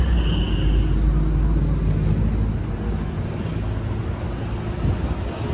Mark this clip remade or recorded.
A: recorded